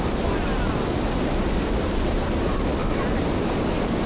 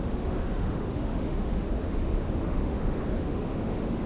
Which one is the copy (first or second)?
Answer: second